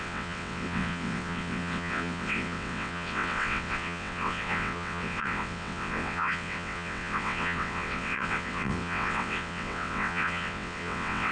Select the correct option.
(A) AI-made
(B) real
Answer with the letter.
A